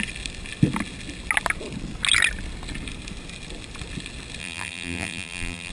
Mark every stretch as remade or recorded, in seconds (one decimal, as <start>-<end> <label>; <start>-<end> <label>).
0.0-4.4 recorded; 4.4-5.7 remade